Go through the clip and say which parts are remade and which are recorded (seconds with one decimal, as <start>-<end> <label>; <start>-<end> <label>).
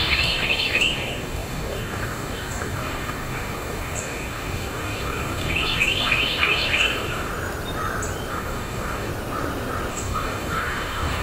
0.0-7.3 remade; 7.3-8.3 recorded; 8.3-9.1 remade; 9.1-9.9 recorded; 9.9-11.2 remade